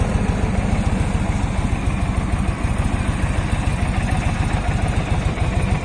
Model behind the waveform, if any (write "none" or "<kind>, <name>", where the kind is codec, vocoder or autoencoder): none